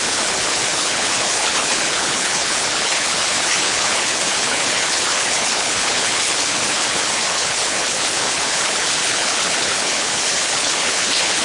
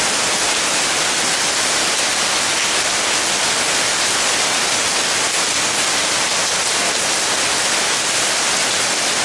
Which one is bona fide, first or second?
second